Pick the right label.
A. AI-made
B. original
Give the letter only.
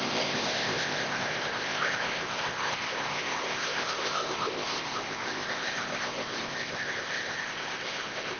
A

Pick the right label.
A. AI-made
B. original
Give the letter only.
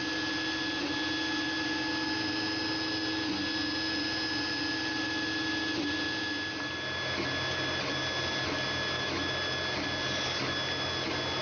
B